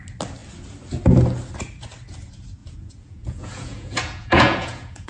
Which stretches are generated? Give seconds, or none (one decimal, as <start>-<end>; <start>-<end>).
2.6-5.1